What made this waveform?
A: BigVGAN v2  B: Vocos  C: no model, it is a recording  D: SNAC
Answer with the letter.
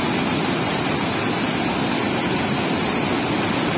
C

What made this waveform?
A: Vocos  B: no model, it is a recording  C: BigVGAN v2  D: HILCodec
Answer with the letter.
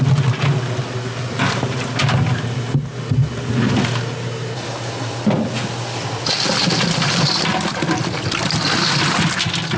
B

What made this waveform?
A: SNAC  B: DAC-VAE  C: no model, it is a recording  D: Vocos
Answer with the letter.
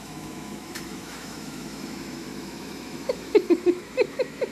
B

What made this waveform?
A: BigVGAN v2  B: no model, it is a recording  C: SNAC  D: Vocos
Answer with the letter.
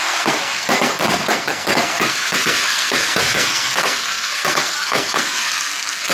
C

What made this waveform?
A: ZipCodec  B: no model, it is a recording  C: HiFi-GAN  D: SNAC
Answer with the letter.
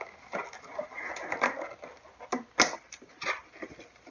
B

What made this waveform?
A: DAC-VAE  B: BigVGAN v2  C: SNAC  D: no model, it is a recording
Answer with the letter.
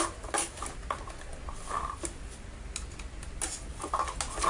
D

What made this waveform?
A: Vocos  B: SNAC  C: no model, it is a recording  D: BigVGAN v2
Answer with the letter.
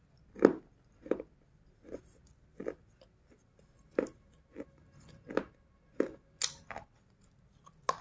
C